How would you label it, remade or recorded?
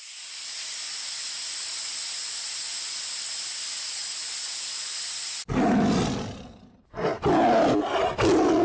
recorded